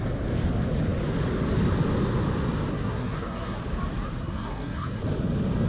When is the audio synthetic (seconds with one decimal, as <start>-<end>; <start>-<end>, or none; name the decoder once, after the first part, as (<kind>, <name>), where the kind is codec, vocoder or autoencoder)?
2.7-3.6 (codec, SNAC); 4.2-5.0